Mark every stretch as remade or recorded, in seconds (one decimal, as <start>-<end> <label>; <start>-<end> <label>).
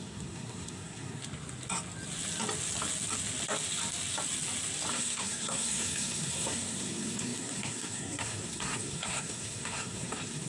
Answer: 0.0-1.2 remade; 1.2-4.9 recorded; 4.9-10.5 remade